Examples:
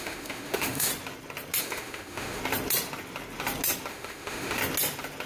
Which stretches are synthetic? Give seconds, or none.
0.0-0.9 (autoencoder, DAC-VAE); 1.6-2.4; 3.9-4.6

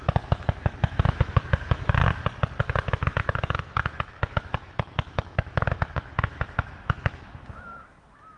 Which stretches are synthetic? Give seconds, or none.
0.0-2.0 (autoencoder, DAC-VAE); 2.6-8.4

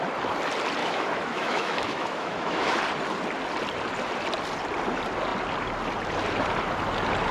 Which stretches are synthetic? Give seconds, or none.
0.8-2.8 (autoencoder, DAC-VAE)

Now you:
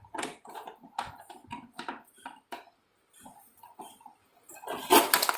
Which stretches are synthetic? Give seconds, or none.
none

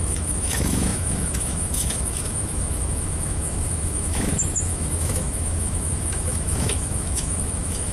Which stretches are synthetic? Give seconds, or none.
0.0-7.9 (autoencoder, DAC-VAE)

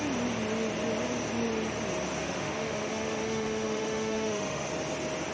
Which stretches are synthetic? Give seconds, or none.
2.2-4.7 (autoencoder, DAC-VAE)

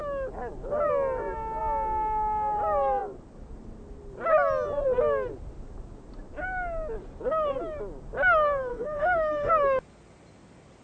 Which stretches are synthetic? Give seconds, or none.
8.7-9.5 (autoencoder, DAC-VAE)